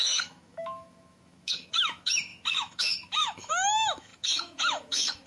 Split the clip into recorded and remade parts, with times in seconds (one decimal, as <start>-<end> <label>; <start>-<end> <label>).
0.0-5.3 remade